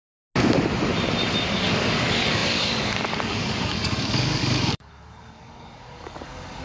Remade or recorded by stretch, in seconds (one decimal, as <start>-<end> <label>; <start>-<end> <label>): 0.0-1.5 recorded; 1.5-6.6 remade